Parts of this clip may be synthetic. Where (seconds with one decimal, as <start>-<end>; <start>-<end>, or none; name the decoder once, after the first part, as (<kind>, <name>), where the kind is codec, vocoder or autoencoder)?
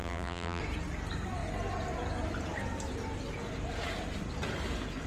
0.0-0.6 (vocoder, BigVGAN v2)